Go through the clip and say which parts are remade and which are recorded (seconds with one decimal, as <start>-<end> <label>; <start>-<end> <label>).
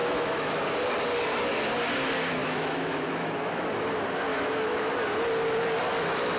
0.0-0.6 remade; 0.6-2.4 recorded; 2.4-3.7 remade; 3.7-4.3 recorded; 4.3-4.9 remade; 4.9-6.4 recorded